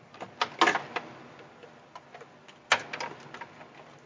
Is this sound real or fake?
real